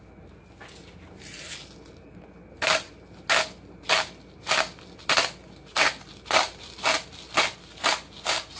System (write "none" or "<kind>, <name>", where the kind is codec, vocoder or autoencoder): none